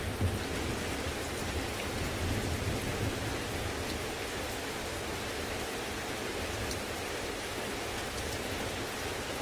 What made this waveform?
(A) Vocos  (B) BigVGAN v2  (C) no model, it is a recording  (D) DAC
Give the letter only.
C